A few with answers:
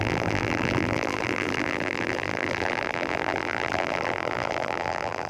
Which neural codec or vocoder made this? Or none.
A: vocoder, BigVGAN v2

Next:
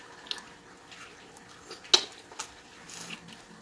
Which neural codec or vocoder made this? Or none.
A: none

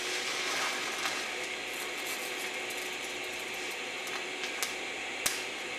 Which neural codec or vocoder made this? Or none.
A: none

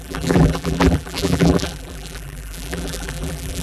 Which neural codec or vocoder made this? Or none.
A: vocoder, BigVGAN v2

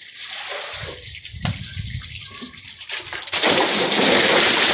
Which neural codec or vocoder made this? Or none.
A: vocoder, BigVGAN v2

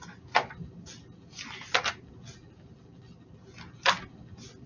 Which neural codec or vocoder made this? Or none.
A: none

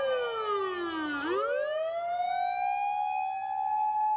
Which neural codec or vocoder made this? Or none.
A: none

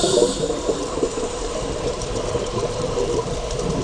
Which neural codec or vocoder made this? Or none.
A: vocoder, BigVGAN v2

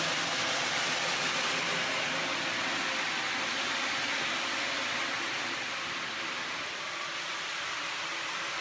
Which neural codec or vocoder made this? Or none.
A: none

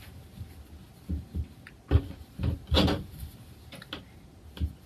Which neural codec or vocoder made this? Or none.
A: none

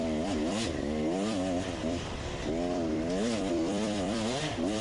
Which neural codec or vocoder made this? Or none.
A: vocoder, BigVGAN v2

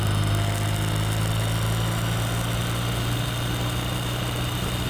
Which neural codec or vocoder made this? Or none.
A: none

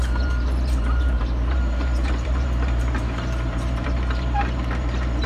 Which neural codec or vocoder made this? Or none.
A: vocoder, BigVGAN v2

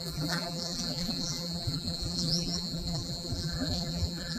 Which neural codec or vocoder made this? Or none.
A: vocoder, BigVGAN v2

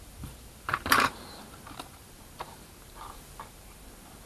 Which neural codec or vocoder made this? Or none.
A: vocoder, BigVGAN v2